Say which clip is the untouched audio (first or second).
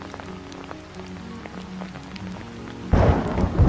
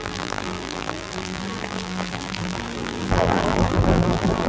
first